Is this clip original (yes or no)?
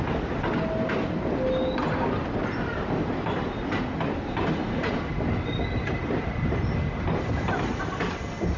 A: yes